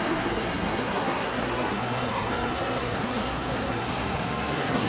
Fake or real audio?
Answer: fake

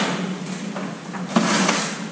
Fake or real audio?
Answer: real